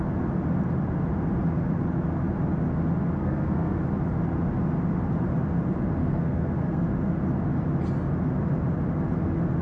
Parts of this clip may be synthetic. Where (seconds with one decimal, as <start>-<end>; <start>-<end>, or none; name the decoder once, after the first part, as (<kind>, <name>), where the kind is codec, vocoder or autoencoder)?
3.2-3.8 (codec, SNAC); 6.0-6.8